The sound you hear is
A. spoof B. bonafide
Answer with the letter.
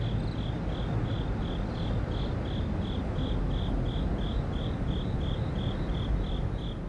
B